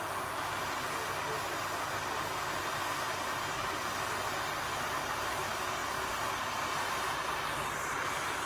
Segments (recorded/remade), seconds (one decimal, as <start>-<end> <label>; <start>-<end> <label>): 0.0-8.5 recorded

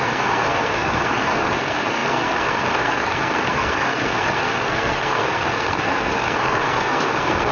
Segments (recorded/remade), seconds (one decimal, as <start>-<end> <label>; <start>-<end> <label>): 0.0-7.5 remade